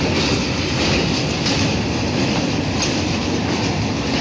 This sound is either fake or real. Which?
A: real